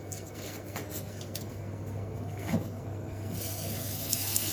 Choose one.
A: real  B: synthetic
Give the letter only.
B